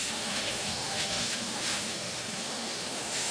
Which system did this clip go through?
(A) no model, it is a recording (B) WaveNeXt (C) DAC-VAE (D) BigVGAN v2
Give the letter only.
C